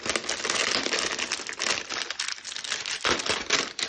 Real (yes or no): yes